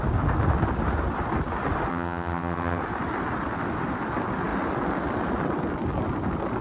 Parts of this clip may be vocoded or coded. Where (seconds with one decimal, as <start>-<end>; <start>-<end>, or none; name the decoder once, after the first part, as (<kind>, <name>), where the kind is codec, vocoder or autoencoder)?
1.9-2.8 (vocoder, HiFi-GAN)